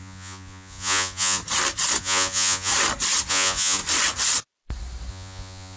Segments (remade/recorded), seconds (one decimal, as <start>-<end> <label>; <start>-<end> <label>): 0.0-1.4 remade; 1.4-2.0 recorded; 2.0-2.7 remade; 2.7-3.3 recorded; 3.3-3.8 remade; 3.8-5.1 recorded; 5.1-5.8 remade